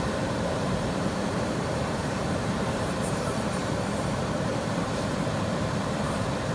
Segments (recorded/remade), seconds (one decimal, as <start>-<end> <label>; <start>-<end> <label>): 0.0-6.5 remade